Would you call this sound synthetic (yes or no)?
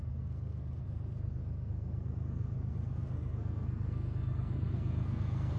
yes